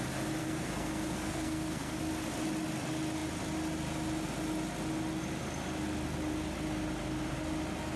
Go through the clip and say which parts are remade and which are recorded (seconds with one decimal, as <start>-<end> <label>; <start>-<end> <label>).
0.0-0.4 recorded; 0.4-2.0 remade; 2.0-8.0 recorded